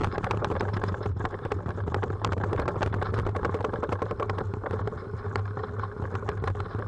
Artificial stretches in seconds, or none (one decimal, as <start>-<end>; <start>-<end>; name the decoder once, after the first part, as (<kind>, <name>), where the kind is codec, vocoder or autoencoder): 0.0-2.7 (vocoder, BigVGAN v2)